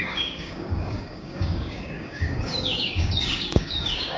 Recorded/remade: remade